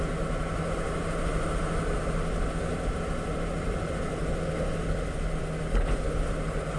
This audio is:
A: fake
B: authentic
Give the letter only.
B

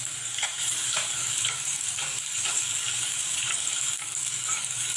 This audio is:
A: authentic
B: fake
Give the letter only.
B